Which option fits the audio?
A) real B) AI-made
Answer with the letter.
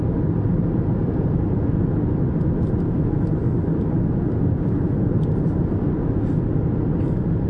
A